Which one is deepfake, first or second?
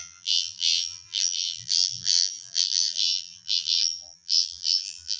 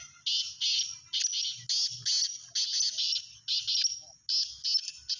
first